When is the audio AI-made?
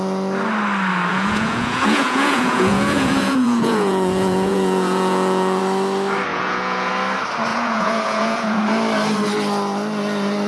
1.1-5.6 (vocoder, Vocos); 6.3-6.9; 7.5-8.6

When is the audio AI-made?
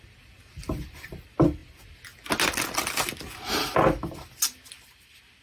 none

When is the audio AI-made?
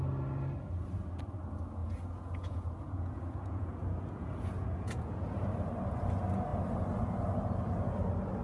1.8-5.3 (vocoder, Vocos)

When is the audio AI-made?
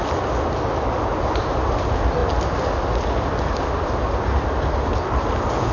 none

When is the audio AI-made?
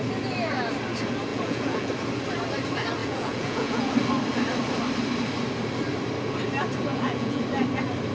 1.3-1.9 (vocoder, Vocos); 3.0-3.9; 6.9-7.4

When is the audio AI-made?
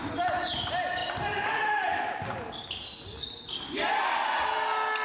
none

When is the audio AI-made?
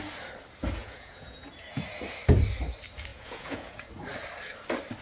0.8-1.8 (vocoder, Vocos); 3.1-3.9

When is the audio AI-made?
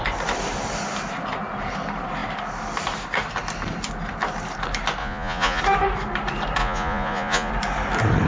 5.0-5.6 (vocoder, Vocos); 6.6-7.5